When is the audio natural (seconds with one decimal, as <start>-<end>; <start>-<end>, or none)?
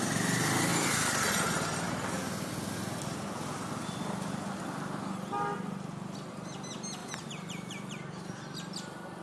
0.0-7.0; 8.1-9.2